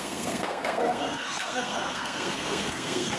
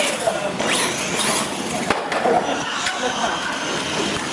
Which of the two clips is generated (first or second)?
first